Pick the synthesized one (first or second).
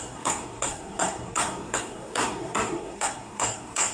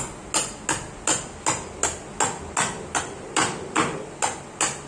first